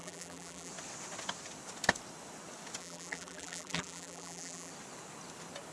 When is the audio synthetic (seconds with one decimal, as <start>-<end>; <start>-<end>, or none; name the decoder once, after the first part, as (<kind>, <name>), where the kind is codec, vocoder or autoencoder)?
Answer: 0.0-0.7 (vocoder, BigVGAN v2); 2.8-4.7